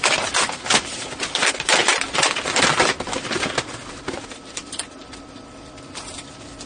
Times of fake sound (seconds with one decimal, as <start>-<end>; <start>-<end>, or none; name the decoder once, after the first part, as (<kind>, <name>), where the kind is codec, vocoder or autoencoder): none

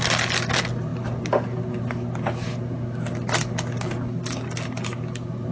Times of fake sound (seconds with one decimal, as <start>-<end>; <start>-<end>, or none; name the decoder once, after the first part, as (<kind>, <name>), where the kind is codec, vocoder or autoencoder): none

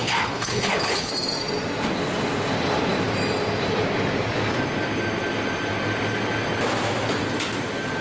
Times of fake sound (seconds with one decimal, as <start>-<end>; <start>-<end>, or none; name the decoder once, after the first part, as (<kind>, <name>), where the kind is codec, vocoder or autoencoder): 0.0-1.1 (codec, HILCodec)

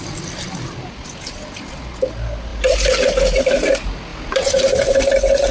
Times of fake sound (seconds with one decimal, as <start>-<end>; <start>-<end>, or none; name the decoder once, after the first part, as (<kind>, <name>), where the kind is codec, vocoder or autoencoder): none